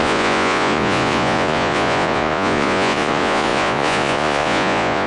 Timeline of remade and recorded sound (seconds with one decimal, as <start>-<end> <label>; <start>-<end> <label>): 0.0-5.1 remade